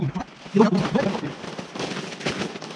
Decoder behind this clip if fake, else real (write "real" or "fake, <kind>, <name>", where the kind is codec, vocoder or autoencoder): fake, vocoder, BigVGAN v2